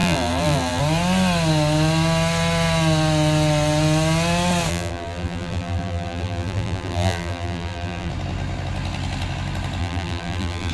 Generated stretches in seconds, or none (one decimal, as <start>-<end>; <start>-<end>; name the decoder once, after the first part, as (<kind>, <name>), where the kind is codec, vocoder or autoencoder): 0.0-0.8 (vocoder, BigVGAN v2); 4.7-8.1; 9.8-10.7

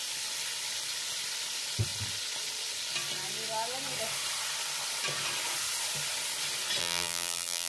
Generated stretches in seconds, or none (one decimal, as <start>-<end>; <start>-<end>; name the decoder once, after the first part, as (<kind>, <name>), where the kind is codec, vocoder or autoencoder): 6.8-7.7 (vocoder, BigVGAN v2)

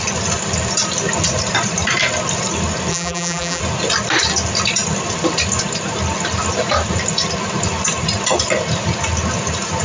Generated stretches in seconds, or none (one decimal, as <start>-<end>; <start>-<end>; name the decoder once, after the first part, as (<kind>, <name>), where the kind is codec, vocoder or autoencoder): 2.9-3.6 (vocoder, BigVGAN v2)

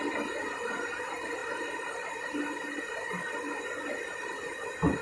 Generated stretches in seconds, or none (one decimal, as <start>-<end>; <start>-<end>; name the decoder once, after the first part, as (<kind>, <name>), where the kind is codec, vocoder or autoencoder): none